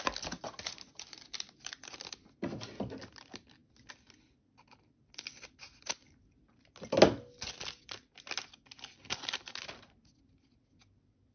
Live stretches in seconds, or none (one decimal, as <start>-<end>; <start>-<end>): 0.0-11.3

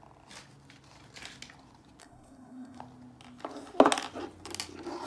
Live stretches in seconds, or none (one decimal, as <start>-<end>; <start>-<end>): 0.0-2.0; 2.8-5.1

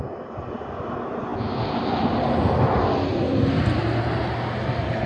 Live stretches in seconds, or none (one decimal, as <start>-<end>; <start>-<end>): 0.0-5.1

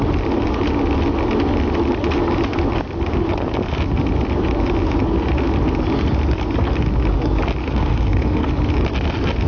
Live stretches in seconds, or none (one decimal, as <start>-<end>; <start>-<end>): 0.0-7.6; 8.5-9.5

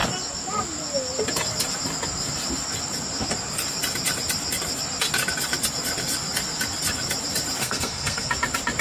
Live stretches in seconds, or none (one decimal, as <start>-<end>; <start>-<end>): 0.0-7.6; 8.3-8.8

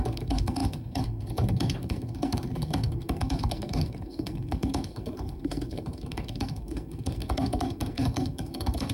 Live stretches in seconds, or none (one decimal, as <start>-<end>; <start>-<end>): none

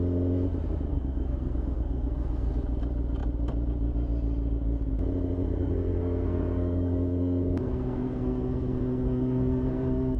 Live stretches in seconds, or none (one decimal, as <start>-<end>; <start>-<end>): 0.0-0.9; 2.5-5.6

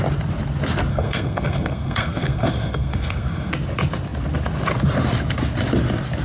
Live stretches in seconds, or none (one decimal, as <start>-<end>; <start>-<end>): 0.0-0.9; 3.5-6.2